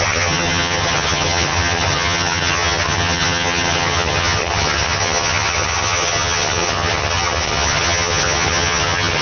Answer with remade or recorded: remade